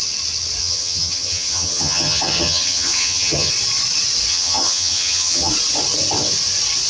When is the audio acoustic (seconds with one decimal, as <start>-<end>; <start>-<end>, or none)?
0.0-0.6; 3.5-4.3; 5.5-6.9